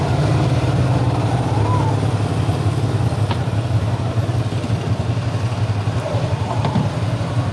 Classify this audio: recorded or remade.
recorded